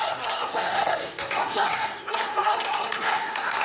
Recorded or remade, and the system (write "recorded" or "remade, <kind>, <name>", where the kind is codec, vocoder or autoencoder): remade, codec, SNAC